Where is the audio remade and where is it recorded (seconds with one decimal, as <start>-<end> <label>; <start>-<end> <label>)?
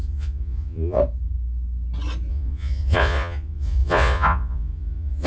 0.0-1.0 remade; 1.0-2.3 recorded; 2.3-5.3 remade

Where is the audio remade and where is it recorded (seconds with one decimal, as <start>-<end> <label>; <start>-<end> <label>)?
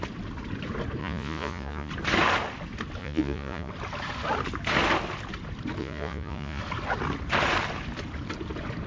0.0-1.0 recorded; 1.0-1.9 remade; 1.9-3.0 recorded; 3.0-3.7 remade; 3.7-5.8 recorded; 5.8-6.6 remade; 6.6-8.9 recorded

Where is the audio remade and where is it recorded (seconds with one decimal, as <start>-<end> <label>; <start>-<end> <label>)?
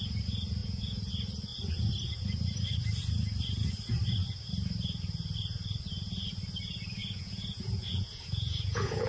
0.0-0.6 recorded; 0.6-1.1 remade; 1.1-7.0 recorded; 7.0-9.1 remade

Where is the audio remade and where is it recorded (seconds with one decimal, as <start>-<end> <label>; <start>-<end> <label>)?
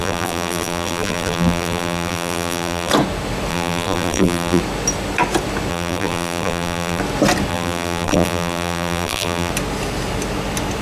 0.0-2.9 remade; 2.9-3.5 recorded; 3.5-4.6 remade; 4.6-5.7 recorded; 5.7-7.0 remade; 7.0-7.5 recorded; 7.5-9.5 remade; 9.5-10.8 recorded